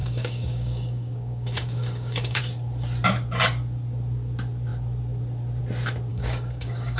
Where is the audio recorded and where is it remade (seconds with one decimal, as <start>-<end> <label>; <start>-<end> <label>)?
0.0-2.4 remade; 2.4-6.1 recorded; 6.1-7.0 remade